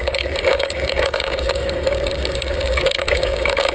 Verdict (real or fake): fake